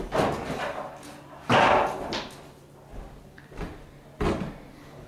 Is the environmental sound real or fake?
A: real